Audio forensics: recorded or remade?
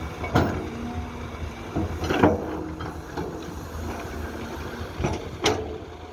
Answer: recorded